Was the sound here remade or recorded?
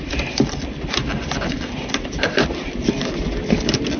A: remade